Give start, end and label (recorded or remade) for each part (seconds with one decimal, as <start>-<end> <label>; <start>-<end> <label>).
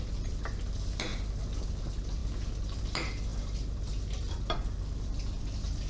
0.0-1.1 remade; 1.1-1.8 recorded; 1.8-5.9 remade